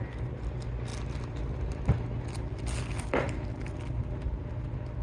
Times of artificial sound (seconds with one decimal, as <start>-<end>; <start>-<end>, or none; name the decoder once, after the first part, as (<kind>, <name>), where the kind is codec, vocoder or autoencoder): none